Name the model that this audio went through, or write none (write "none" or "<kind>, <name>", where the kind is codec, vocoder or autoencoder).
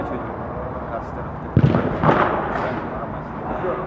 none